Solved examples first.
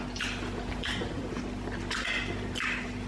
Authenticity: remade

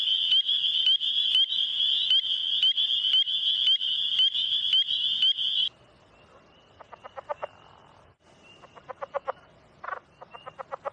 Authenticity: recorded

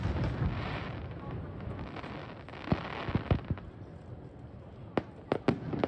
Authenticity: recorded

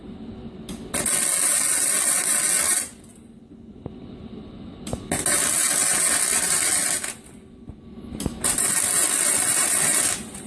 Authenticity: recorded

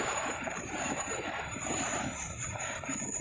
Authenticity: remade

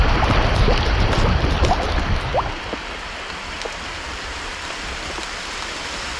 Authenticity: recorded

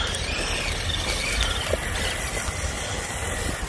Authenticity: recorded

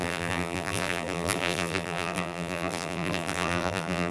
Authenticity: remade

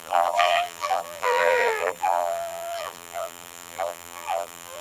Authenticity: remade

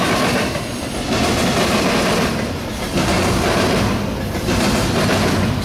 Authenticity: recorded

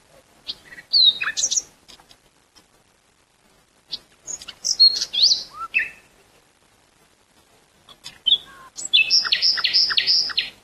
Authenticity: recorded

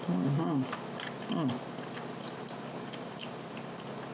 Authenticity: recorded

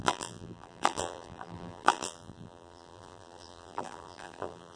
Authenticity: remade